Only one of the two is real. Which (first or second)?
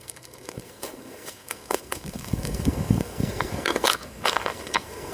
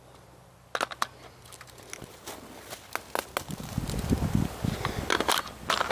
second